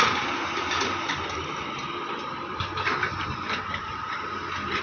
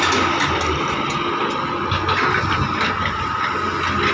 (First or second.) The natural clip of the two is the second